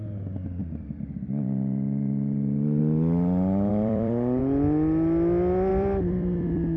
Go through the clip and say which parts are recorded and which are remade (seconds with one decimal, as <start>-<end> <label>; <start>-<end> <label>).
0.0-0.6 recorded; 0.6-2.8 remade; 2.8-3.7 recorded; 3.7-4.4 remade; 4.4-5.7 recorded; 5.7-6.8 remade